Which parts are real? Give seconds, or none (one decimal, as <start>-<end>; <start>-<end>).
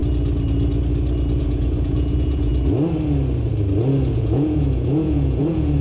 0.0-1.4; 2.5-4.1